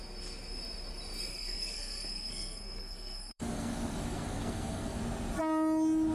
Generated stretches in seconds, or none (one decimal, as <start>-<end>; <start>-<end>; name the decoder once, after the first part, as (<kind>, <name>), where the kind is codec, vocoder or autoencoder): 1.3-5.0 (codec, SNAC)